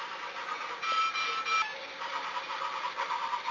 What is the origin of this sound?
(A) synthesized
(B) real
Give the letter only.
B